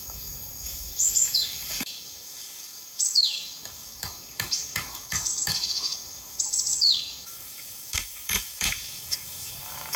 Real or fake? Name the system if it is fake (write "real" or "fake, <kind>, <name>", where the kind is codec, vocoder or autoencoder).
fake, codec, DAC